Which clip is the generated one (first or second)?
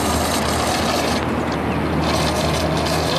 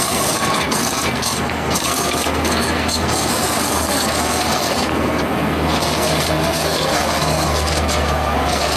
second